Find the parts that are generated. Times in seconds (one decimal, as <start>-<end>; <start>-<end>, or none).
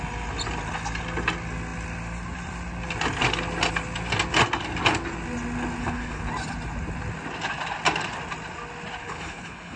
5.8-6.3; 9.0-9.8